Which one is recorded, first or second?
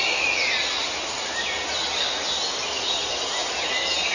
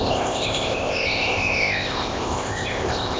first